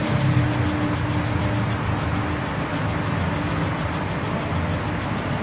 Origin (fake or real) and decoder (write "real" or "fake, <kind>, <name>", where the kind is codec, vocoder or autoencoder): real